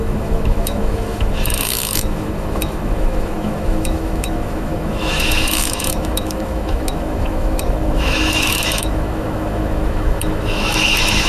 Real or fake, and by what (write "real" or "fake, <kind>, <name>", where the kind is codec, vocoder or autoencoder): fake, autoencoder, DAC-VAE